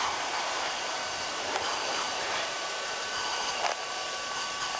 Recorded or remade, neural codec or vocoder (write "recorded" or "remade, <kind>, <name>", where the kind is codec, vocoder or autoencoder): remade, vocoder, BigVGAN v2